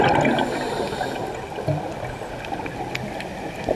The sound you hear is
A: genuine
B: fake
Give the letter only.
A